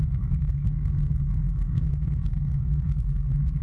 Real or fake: fake